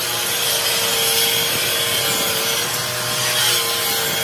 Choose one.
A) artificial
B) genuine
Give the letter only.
B